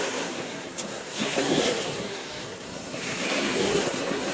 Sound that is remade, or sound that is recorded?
remade